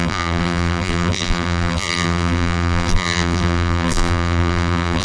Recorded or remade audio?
remade